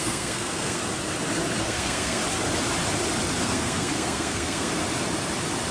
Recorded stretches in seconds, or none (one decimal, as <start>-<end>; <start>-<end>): 0.8-1.6; 2.2-3.4; 4.8-5.7